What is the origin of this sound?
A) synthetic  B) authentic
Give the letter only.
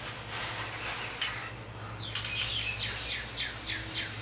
B